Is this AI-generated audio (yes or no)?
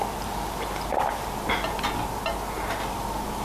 no